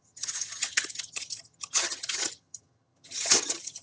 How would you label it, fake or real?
fake